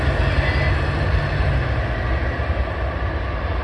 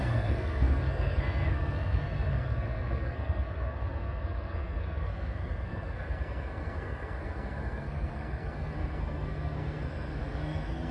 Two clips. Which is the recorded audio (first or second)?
first